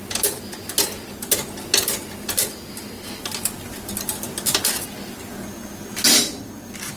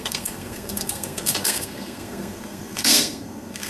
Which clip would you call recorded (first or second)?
first